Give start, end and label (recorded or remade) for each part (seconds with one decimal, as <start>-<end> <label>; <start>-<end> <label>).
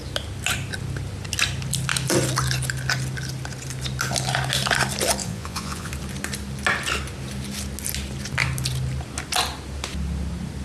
0.0-5.2 recorded; 5.2-5.9 remade; 5.9-10.6 recorded